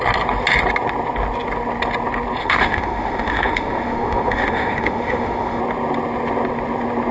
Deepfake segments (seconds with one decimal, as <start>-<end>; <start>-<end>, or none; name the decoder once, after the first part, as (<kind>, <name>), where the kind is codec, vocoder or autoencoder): 2.4-5.6 (autoencoder, DAC-VAE)